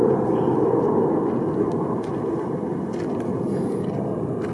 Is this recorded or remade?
recorded